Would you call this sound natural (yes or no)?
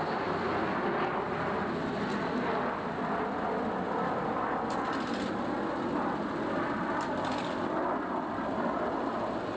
yes